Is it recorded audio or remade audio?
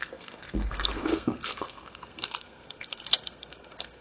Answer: remade